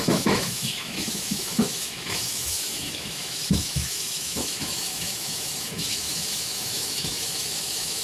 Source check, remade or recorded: remade